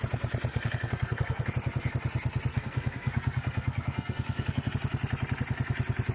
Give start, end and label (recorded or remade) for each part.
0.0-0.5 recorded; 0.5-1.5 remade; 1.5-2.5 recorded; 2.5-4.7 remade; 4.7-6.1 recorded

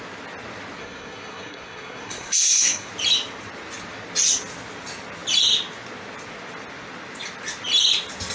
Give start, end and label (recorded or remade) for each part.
0.0-0.8 recorded; 0.8-2.9 remade; 2.9-8.3 recorded

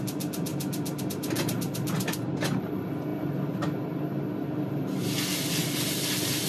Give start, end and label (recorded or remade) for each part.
0.0-6.5 recorded

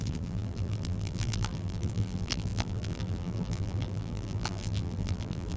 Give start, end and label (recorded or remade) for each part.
0.0-5.6 remade

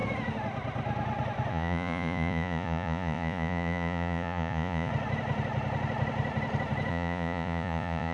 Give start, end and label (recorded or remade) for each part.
0.0-1.5 recorded; 1.5-4.9 remade; 4.9-6.9 recorded; 6.9-8.1 remade